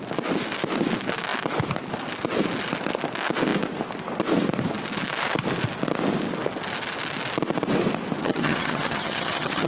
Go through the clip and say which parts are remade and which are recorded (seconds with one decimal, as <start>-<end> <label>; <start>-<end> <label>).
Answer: 0.0-8.2 recorded; 8.2-9.7 remade